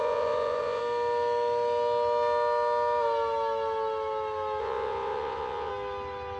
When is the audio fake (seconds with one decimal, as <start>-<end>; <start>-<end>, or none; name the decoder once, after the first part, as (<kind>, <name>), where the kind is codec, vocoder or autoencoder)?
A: 0.0-0.8 (vocoder, Vocos); 4.6-5.7